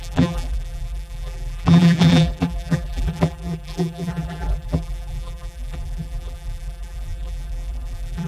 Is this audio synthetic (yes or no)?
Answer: yes